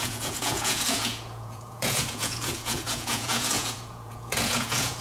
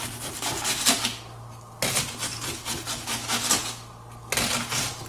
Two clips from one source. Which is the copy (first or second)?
first